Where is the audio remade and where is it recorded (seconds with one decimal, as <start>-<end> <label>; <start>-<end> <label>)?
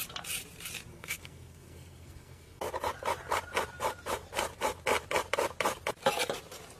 0.0-0.9 recorded; 0.9-2.7 remade; 2.7-6.8 recorded